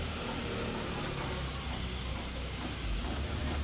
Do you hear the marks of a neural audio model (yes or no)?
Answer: no